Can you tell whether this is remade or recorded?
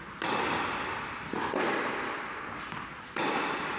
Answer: recorded